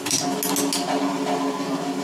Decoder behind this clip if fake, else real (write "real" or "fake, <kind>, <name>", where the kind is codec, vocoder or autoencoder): real